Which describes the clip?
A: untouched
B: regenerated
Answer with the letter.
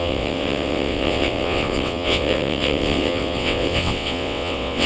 B